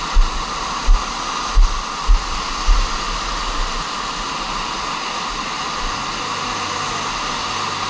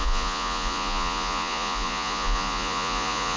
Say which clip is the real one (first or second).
first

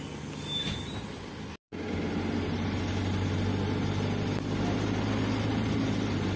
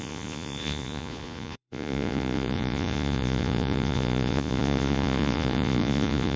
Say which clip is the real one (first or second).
first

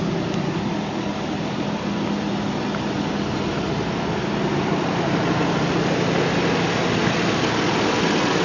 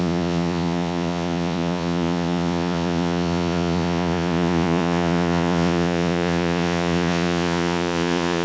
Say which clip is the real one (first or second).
first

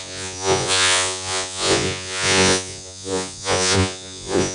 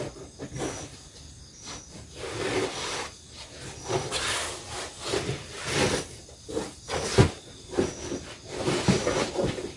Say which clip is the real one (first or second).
second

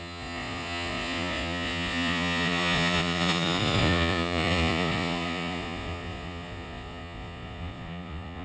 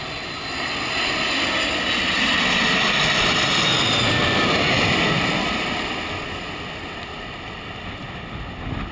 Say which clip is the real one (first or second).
second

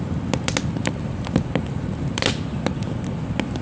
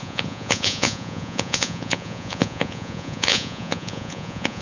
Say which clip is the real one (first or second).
first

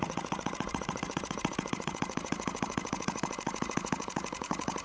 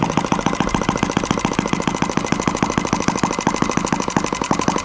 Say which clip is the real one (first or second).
second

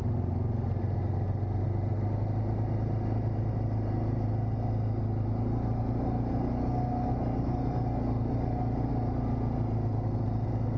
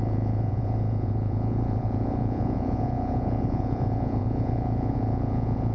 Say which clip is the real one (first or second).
first